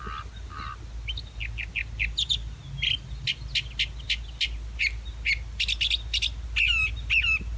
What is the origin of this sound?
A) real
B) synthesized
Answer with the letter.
A